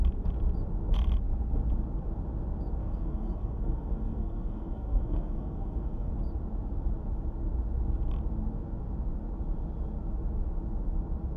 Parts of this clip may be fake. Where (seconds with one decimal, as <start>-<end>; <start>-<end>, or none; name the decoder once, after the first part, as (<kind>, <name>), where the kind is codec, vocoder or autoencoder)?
2.8-6.1 (codec, SNAC)